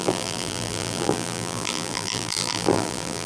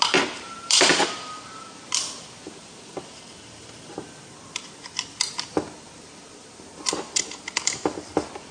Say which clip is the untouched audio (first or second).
second